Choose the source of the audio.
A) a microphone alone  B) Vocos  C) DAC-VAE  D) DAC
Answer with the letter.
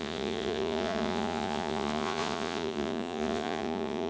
B